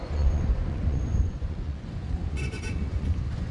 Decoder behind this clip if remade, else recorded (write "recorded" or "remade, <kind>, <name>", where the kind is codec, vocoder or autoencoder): remade, vocoder, Vocos